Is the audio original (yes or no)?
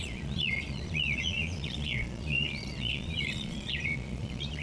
no